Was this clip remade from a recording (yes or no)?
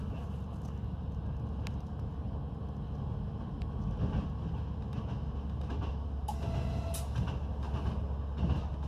no